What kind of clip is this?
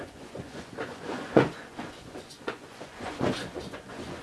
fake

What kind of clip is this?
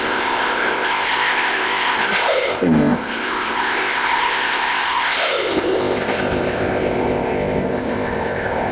fake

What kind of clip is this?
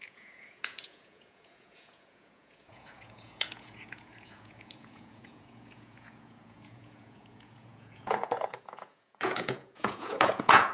fake